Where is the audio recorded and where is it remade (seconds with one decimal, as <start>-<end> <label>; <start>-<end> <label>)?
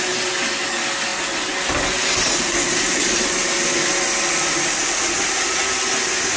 0.0-6.4 recorded